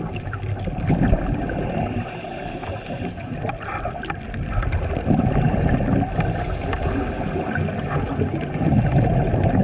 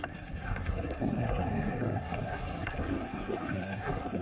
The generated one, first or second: second